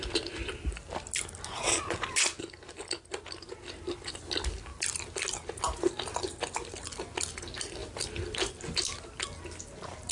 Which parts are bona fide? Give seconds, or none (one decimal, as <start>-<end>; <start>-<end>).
0.0-10.1